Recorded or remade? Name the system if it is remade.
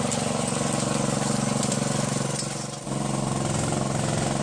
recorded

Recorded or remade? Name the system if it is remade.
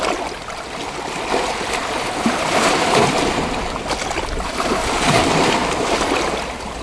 recorded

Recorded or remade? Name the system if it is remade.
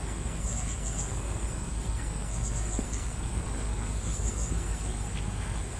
remade, codec, SNAC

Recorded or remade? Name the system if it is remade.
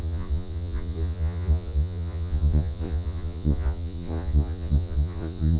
remade, vocoder, Vocos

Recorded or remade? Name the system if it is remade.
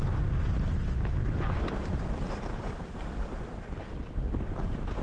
recorded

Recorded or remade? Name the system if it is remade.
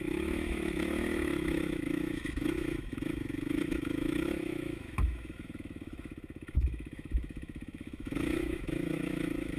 remade, autoencoder, DAC-VAE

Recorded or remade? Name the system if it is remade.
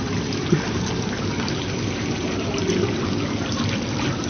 recorded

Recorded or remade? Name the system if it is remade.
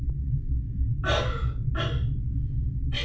recorded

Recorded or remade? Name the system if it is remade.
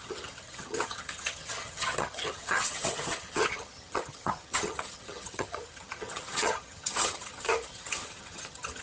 remade, vocoder, HiFi-GAN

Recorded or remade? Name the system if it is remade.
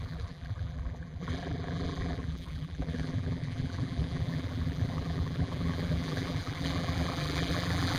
remade, vocoder, BigVGAN v2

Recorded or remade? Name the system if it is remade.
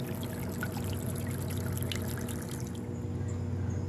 recorded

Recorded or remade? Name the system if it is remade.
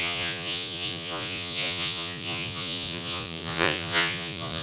remade, vocoder, Vocos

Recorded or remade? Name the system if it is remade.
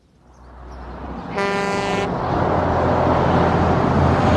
recorded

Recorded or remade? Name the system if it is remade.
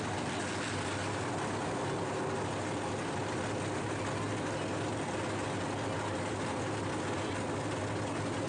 recorded